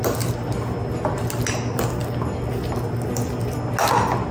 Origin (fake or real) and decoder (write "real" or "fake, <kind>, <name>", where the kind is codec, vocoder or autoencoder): real